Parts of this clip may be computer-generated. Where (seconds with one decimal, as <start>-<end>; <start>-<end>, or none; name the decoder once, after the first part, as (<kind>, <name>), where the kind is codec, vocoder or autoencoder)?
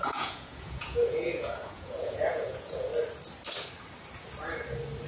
0.0-2.9 (vocoder, Vocos)